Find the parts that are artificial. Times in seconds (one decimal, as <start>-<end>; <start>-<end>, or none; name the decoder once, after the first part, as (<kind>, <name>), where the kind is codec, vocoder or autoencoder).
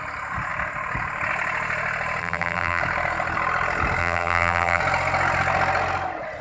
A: 2.2-2.8 (vocoder, BigVGAN v2); 4.0-4.8